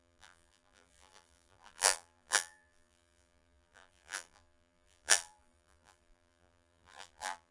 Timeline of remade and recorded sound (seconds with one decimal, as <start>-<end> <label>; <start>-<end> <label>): 0.0-7.5 remade